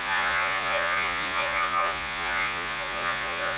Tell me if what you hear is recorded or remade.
remade